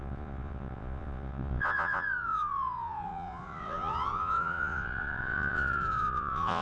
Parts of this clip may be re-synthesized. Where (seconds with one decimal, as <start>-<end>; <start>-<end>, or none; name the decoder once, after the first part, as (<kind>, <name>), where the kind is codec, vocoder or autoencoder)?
0.0-6.6 (vocoder, Vocos)